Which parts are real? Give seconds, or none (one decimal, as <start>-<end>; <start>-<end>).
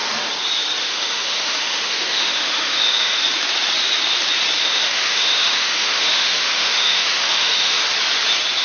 0.0-0.8; 3.2-4.6; 7.8-8.6